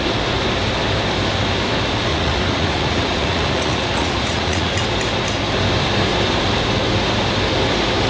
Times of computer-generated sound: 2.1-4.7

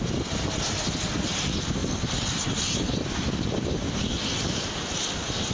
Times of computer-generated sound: none

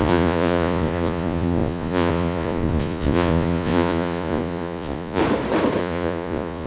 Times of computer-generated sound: 0.0-5.2; 5.8-6.7

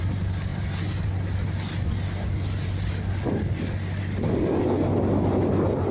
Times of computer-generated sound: none